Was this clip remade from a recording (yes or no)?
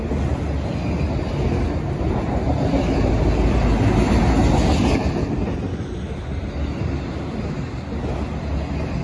no